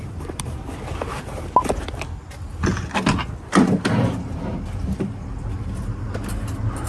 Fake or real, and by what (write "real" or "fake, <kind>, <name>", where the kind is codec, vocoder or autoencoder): real